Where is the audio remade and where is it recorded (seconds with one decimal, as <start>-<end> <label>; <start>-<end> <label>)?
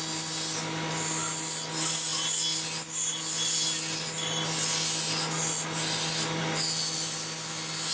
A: 0.0-7.9 recorded